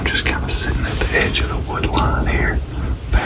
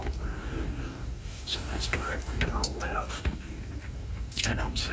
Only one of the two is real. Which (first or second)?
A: first